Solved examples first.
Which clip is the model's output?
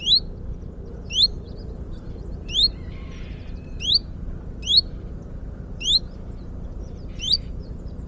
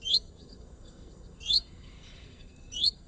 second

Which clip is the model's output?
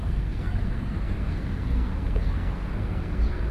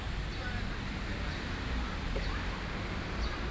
first